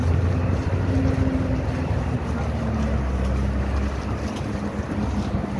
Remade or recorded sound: recorded